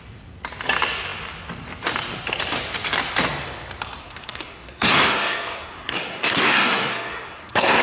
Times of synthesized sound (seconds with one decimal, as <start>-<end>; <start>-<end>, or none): 4.0-7.8